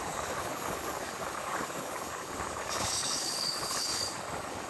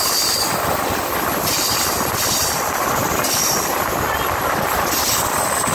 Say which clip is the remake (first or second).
first